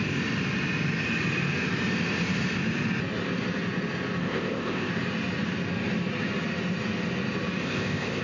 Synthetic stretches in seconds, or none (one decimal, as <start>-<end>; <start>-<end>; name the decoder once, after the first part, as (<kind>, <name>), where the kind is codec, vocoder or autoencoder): 4.2-4.9 (codec, ZipCodec); 7.6-8.2